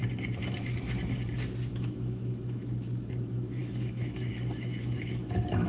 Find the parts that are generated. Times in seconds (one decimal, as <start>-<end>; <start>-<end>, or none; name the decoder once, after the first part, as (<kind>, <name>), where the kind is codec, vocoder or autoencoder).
1.7-5.7 (autoencoder, DAC-VAE)